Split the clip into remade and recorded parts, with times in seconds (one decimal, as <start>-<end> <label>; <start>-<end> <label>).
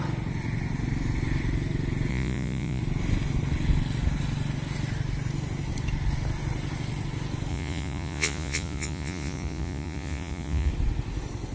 0.0-2.1 recorded; 2.1-2.8 remade; 2.8-7.5 recorded; 7.5-10.7 remade; 10.7-11.5 recorded